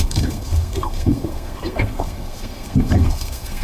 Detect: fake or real fake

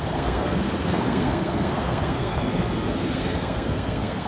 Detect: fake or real fake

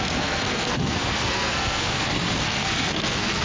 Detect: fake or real fake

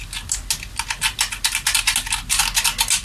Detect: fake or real real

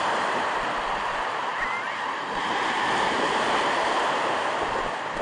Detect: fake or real real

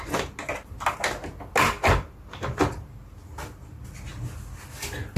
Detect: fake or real real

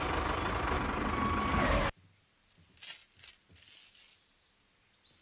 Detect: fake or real real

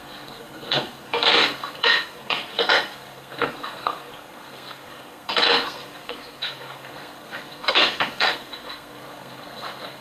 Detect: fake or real fake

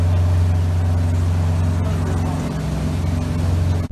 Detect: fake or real real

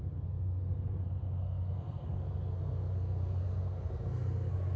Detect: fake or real fake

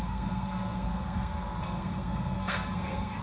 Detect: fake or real fake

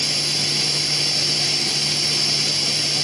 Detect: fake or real real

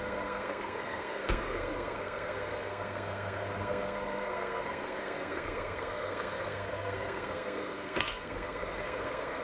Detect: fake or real fake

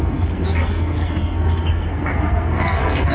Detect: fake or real fake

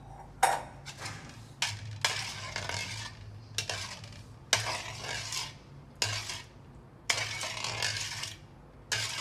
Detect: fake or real real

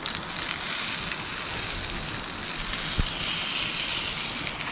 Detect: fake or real real